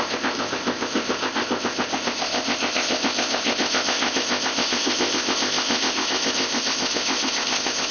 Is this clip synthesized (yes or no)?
yes